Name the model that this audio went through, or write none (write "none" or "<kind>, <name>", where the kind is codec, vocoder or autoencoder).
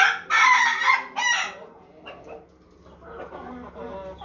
none